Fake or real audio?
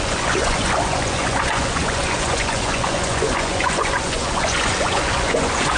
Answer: fake